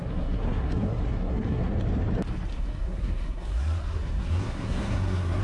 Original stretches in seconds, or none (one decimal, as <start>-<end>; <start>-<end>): 1.7-2.5